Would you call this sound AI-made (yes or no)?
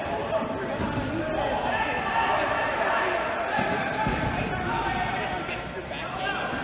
no